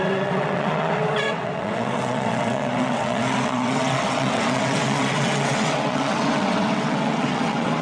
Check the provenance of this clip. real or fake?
fake